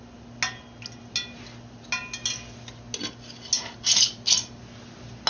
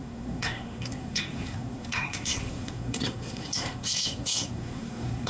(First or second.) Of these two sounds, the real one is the first